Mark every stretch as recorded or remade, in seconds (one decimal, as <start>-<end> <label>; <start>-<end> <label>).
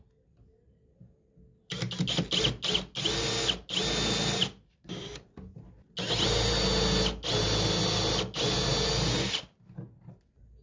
0.0-10.6 recorded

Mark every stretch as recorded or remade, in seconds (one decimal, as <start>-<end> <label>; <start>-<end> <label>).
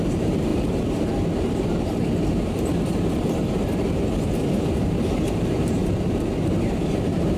0.0-7.4 remade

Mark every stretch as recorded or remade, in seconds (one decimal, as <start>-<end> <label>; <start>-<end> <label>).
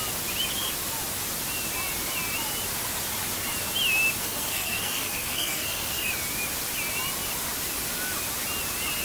0.0-4.2 recorded; 4.2-6.1 remade; 6.1-9.0 recorded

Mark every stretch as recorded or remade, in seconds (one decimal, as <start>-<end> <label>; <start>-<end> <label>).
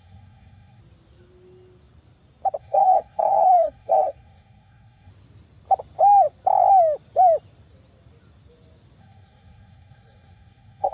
0.0-0.8 remade; 0.8-2.6 recorded; 2.6-5.1 remade; 5.1-9.0 recorded; 9.0-10.9 remade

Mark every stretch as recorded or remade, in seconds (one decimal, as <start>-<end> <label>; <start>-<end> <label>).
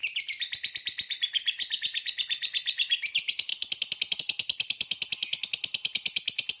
0.0-6.6 recorded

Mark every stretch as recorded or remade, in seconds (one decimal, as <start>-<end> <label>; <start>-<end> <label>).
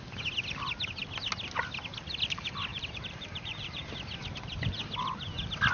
0.0-2.7 recorded; 2.7-3.8 remade; 3.8-5.7 recorded